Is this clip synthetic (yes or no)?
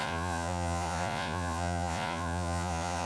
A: yes